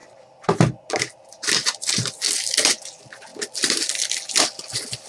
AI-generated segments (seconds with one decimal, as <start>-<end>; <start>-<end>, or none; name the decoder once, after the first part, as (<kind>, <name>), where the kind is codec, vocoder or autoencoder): none